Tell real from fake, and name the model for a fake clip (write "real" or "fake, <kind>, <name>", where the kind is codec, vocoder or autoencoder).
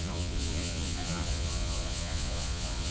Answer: fake, vocoder, Vocos